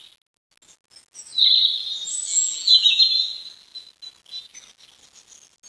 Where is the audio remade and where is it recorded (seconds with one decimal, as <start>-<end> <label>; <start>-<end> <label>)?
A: 0.0-2.3 recorded; 2.3-3.0 remade; 3.0-5.7 recorded